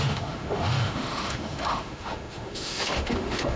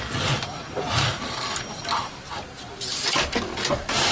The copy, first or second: first